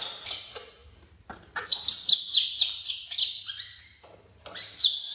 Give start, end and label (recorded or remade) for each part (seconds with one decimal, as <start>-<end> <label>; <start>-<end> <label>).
0.0-5.1 recorded